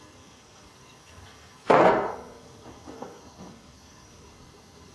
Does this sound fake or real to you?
fake